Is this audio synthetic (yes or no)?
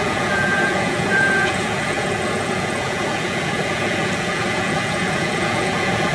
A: yes